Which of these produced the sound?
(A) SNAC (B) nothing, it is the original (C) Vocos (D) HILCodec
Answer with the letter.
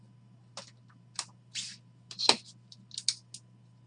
B